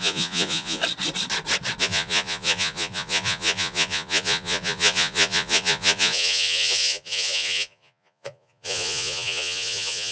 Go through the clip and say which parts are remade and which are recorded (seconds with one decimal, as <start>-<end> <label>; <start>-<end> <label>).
0.0-0.8 remade; 0.8-1.8 recorded; 1.8-10.1 remade